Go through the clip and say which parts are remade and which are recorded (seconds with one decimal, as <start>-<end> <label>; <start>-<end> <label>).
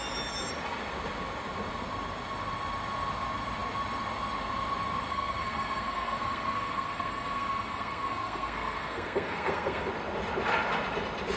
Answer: 0.0-5.1 recorded; 5.1-9.9 remade; 9.9-11.4 recorded